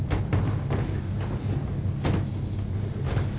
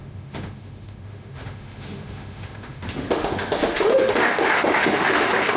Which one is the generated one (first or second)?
second